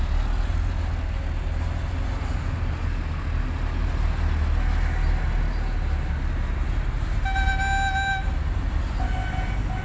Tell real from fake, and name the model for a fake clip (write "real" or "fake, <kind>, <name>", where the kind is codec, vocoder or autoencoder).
real